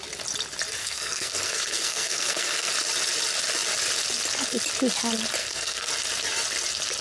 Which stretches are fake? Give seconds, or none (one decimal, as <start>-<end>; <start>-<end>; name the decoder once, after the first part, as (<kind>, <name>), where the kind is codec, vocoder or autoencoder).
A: 0.8-2.7 (codec, SNAC); 5.4-5.9